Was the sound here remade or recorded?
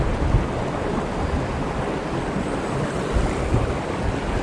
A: recorded